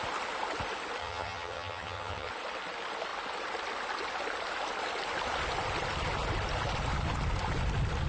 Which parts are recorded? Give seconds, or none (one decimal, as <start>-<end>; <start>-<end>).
0.0-1.0; 2.3-8.1